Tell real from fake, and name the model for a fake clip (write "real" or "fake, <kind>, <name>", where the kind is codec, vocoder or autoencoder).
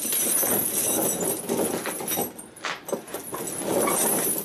real